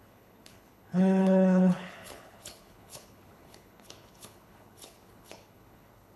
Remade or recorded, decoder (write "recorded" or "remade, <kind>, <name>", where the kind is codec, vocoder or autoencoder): remade, codec, HILCodec